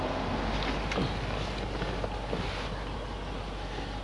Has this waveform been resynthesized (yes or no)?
no